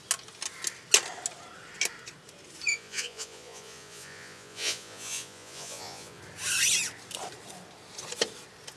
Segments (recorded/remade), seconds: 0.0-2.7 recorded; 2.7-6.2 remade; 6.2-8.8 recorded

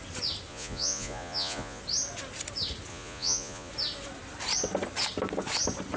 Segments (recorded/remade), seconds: 0.0-0.5 recorded; 0.5-1.8 remade; 1.8-2.9 recorded; 2.9-3.7 remade; 3.7-6.0 recorded

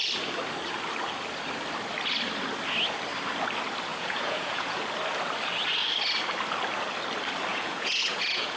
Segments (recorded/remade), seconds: 0.0-3.9 recorded; 3.9-4.8 remade; 4.8-7.5 recorded; 7.5-8.6 remade